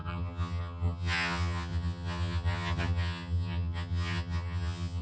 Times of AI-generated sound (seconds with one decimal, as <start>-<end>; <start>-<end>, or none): 0.0-5.0